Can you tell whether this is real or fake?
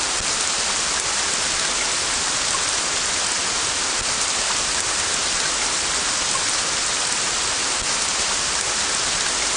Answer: real